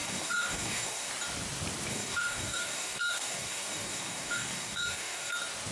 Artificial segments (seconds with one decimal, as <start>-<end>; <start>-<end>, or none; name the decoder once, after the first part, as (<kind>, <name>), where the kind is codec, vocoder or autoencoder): 0.0-1.1 (codec, DAC); 1.9-5.3